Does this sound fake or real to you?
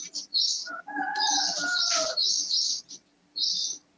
fake